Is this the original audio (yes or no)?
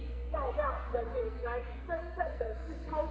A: no